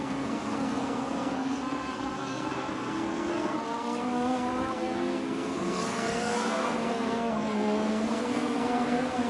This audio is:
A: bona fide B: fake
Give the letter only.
B